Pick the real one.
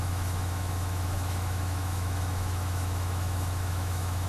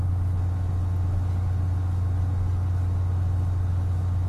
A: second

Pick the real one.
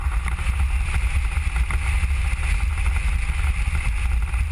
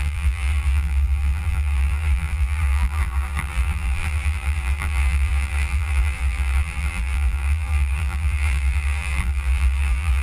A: first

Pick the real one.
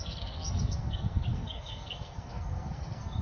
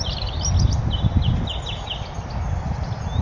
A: second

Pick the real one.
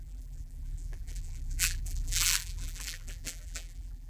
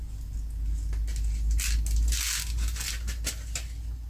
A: second